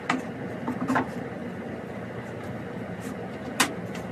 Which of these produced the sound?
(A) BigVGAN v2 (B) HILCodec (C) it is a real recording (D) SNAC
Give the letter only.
C